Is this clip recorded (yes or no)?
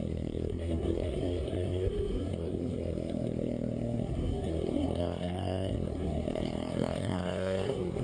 no